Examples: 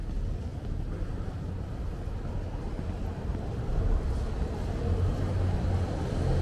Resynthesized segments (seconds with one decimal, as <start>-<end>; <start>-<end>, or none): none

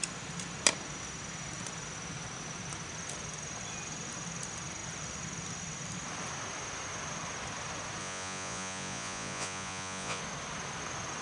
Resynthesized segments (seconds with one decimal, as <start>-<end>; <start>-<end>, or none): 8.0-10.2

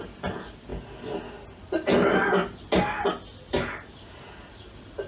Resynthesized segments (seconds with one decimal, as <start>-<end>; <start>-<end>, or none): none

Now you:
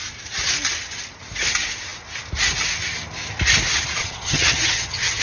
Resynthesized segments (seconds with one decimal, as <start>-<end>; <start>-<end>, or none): 4.0-5.2

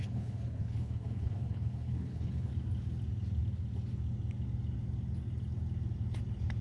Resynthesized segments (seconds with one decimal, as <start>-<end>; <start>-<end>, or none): 0.0-2.5

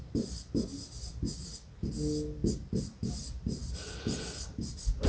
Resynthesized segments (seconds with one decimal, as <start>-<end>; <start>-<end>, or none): none

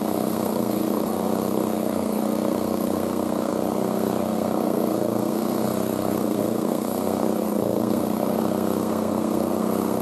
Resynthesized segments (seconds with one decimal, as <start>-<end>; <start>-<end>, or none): 0.0-10.0

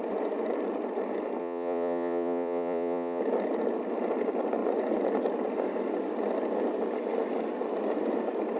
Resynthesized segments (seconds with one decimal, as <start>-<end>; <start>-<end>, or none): 1.4-3.2